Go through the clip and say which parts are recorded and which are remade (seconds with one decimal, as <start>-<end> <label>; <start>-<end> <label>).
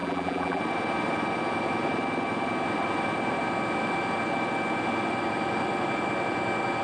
0.0-0.6 remade; 0.6-6.8 recorded